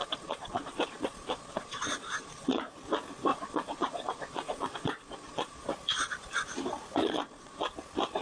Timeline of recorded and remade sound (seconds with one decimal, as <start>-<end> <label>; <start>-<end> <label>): 0.0-2.7 remade; 2.7-3.3 recorded; 3.3-5.7 remade; 5.7-7.0 recorded; 7.0-7.6 remade; 7.6-8.2 recorded